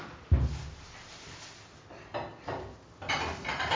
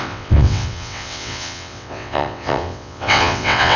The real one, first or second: first